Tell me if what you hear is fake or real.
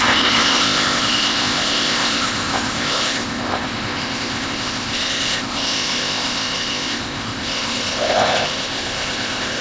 fake